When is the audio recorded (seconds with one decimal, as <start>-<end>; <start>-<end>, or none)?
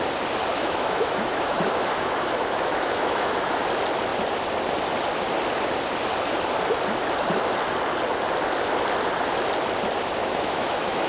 0.0-0.5; 3.6-10.2